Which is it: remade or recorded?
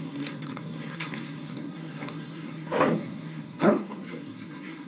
remade